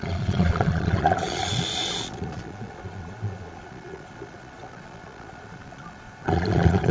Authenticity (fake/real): fake